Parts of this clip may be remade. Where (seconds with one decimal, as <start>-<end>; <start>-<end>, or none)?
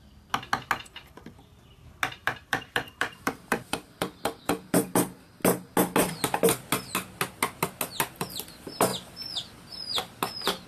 2.2-5.3